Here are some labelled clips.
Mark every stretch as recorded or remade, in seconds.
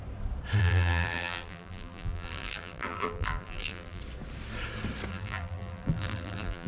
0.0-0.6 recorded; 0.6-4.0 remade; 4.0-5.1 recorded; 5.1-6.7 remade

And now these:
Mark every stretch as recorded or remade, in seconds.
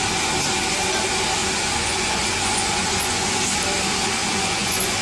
0.0-1.4 recorded; 1.4-3.4 remade; 3.4-4.2 recorded; 4.2-5.0 remade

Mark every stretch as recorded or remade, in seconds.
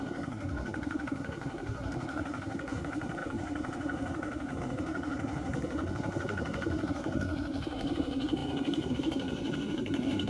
0.0-10.3 remade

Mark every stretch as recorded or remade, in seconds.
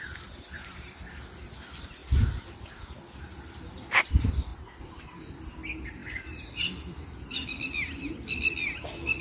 0.0-9.2 recorded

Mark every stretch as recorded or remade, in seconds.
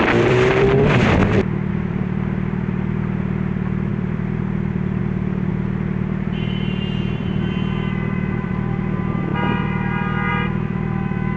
0.0-1.2 remade; 1.2-1.7 recorded; 1.7-9.3 remade; 9.3-10.3 recorded; 10.3-11.4 remade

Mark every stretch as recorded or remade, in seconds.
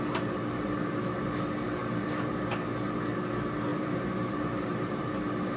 0.0-3.7 recorded; 3.7-5.1 remade; 5.1-5.6 recorded